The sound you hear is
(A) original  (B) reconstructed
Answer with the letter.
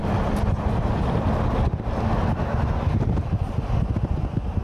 A